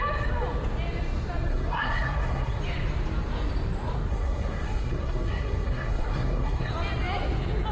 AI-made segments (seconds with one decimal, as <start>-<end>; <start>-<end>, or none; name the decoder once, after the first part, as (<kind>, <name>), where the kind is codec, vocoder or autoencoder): 1.5-2.6 (codec, SNAC); 4.1-6.7